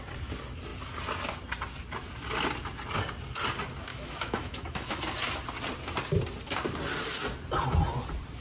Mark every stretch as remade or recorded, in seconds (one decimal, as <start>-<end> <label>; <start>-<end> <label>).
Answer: 0.0-3.9 recorded; 3.9-5.0 remade; 5.0-8.4 recorded